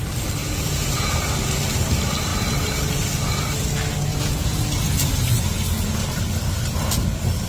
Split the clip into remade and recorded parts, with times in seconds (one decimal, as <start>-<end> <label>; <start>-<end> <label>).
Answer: 0.0-0.4 recorded; 0.4-1.1 remade; 1.1-4.1 recorded; 4.1-4.6 remade; 4.6-7.5 recorded